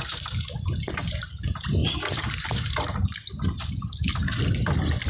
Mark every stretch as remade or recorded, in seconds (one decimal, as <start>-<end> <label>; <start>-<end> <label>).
0.0-5.1 recorded